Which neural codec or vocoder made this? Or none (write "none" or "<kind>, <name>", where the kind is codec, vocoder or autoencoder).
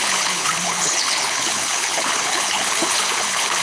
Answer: codec, HILCodec